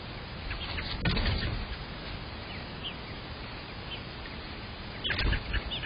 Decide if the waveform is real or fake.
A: real